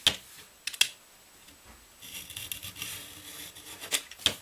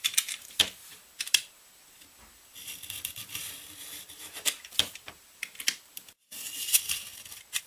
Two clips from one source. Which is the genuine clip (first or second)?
first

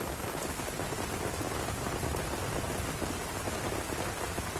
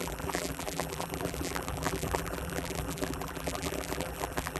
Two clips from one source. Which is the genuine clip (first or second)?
first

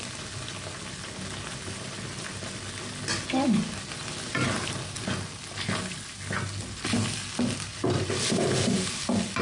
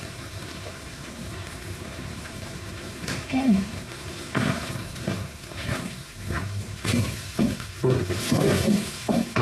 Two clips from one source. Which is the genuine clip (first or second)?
first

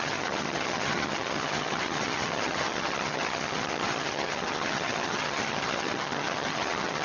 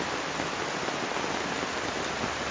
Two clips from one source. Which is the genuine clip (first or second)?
second